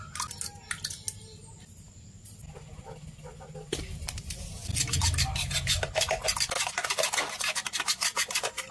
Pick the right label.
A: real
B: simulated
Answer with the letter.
A